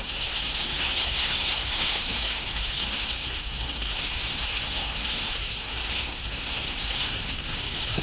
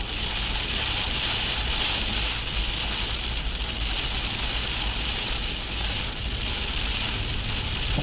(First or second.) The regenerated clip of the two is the first